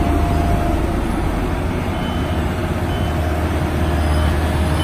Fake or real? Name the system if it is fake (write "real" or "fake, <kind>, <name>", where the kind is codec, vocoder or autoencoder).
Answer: real